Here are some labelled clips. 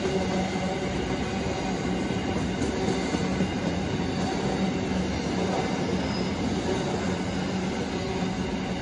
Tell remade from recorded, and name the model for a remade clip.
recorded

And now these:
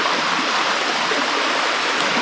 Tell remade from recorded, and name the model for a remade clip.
recorded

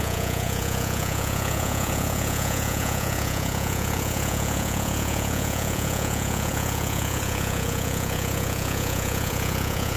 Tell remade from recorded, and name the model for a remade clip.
remade, vocoder, Vocos